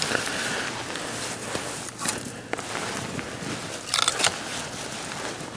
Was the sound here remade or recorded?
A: recorded